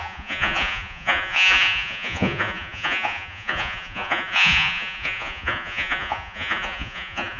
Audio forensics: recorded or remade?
remade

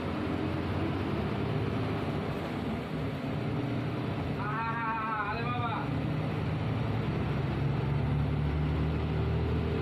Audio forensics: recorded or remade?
recorded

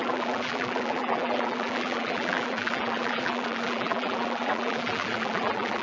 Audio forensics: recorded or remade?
remade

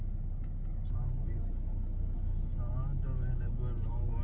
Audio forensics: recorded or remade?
recorded